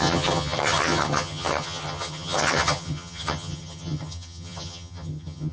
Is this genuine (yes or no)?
no